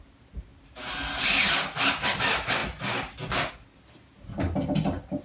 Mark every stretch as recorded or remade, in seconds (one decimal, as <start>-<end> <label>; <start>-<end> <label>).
0.0-5.2 recorded